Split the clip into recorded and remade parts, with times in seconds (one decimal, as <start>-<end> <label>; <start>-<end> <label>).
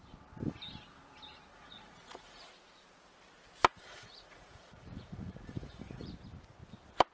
0.0-1.5 recorded; 1.5-2.4 remade; 2.4-3.7 recorded; 3.7-6.1 remade; 6.1-7.1 recorded